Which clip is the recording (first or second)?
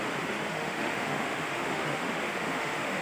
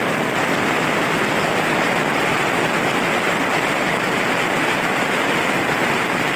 second